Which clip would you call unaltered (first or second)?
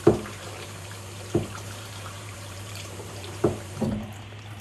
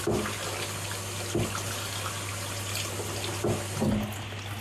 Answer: second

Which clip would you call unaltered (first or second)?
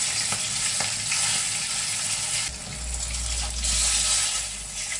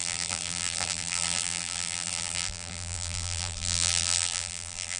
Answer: first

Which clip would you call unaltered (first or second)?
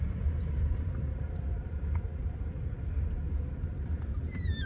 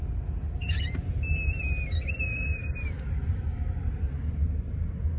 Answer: second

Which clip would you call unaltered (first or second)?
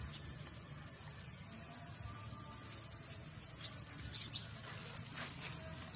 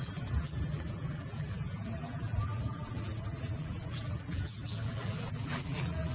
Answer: first